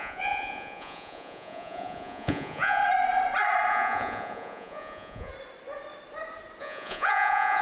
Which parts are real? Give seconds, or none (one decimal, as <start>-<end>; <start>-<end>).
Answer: 2.8-3.7; 5.3-6.6